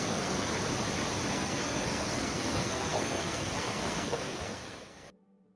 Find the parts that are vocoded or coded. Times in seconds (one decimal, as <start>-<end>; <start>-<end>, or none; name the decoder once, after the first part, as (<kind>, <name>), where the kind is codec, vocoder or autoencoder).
0.0-0.5 (codec, SNAC); 1.3-5.6

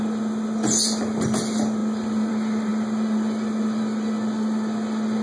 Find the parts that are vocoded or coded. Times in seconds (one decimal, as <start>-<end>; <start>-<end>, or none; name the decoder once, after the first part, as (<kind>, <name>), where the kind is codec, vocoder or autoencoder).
none

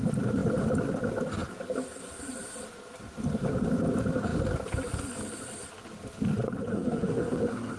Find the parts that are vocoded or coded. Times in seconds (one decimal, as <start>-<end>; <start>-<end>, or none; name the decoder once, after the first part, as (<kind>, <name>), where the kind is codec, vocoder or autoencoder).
6.7-7.8 (codec, SNAC)

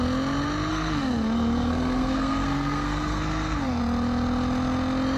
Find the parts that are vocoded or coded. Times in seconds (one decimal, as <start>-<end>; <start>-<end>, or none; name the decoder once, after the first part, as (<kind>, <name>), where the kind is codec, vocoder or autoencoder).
0.7-3.8 (codec, SNAC)

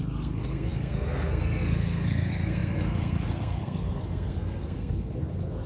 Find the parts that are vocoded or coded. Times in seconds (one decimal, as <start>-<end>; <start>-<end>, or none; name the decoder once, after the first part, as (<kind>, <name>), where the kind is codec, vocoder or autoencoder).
0.0-5.7 (codec, SNAC)

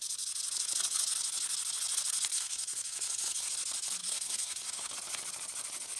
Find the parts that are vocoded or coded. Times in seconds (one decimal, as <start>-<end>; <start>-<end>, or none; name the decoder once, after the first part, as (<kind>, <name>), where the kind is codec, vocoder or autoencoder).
2.3-3.5 (codec, SNAC); 4.0-4.9

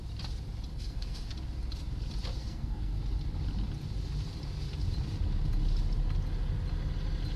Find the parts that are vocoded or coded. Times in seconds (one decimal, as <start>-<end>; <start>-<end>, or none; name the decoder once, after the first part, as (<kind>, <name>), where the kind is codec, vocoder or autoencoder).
0.7-1.3 (codec, SNAC); 2.4-3.0